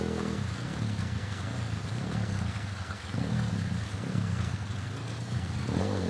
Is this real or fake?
fake